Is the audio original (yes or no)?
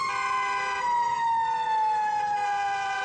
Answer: yes